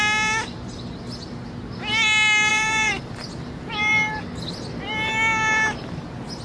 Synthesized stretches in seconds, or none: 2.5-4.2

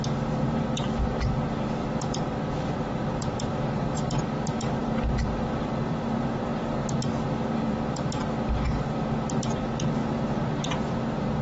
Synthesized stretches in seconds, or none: 1.8-6.5; 10.0-11.0

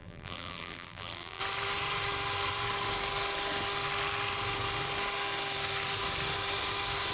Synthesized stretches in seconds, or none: 0.0-1.4

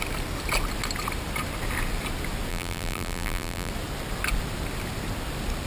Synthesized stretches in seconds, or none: 2.5-3.7

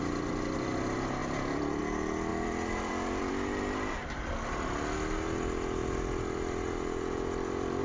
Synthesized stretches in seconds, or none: 1.2-1.8; 2.3-4.4; 5.8-7.8

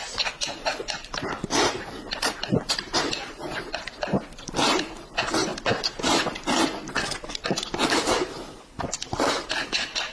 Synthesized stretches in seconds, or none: 0.0-2.5; 3.0-5.5; 7.7-10.1

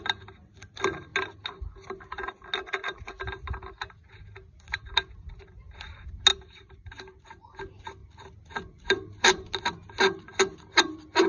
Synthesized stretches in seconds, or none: 6.3-7.6

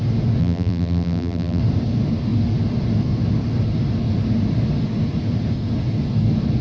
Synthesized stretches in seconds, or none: 0.4-1.6